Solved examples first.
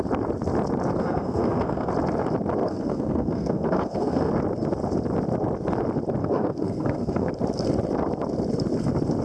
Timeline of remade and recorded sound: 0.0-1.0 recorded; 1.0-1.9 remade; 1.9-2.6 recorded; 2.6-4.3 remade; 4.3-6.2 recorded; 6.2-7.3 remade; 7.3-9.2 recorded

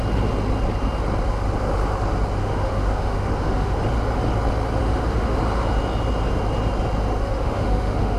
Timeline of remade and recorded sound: 0.0-2.4 recorded; 2.4-3.8 remade; 3.8-4.8 recorded; 4.8-5.4 remade; 5.4-7.2 recorded; 7.2-8.2 remade

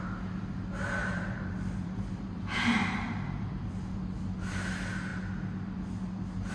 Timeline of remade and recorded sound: 0.0-1.0 recorded; 1.0-3.7 remade; 3.7-6.5 recorded

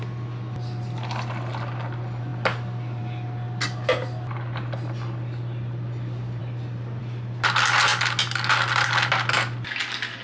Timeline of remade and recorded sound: 0.0-10.2 recorded

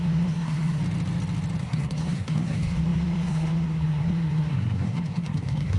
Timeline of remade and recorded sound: 0.0-0.8 remade; 0.8-1.6 recorded; 1.6-5.8 remade

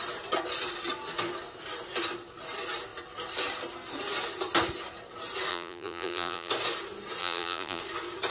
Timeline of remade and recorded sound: 0.0-5.5 recorded; 5.5-6.5 remade; 6.5-7.2 recorded; 7.2-7.8 remade; 7.8-8.3 recorded

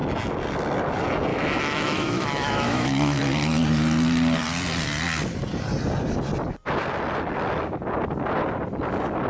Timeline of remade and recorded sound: 0.0-1.3 recorded; 1.3-3.2 remade; 3.2-9.3 recorded